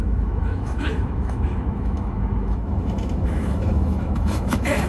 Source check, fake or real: fake